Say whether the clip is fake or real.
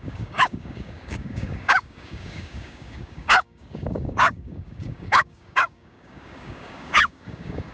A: fake